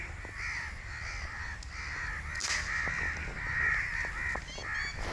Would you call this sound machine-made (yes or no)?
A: no